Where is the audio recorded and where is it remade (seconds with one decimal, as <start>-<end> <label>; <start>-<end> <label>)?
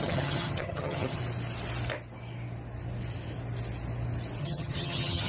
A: 0.0-1.2 remade; 1.2-4.4 recorded; 4.4-5.3 remade